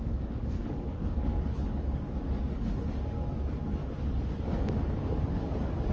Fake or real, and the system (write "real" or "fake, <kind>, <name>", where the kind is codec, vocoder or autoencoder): fake, codec, DAC